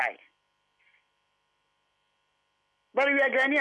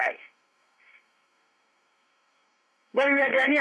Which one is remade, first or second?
second